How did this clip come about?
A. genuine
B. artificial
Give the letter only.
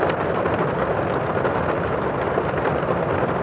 A